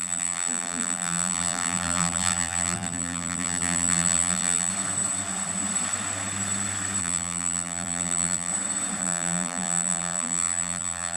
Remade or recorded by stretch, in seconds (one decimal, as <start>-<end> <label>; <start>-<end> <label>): 0.0-4.7 remade; 4.7-7.0 recorded; 7.0-8.5 remade; 8.5-9.0 recorded; 9.0-11.2 remade